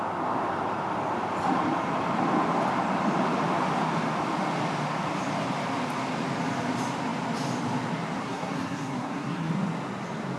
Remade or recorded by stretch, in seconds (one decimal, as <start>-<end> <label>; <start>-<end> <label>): 0.0-8.2 recorded; 8.2-9.5 remade; 9.5-10.4 recorded